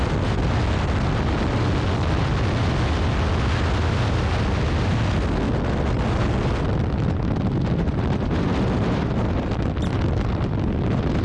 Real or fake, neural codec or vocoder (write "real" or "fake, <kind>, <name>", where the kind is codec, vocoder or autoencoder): real